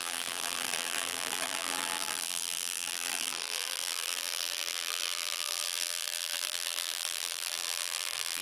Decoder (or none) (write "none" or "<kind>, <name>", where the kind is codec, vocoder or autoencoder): vocoder, BigVGAN v2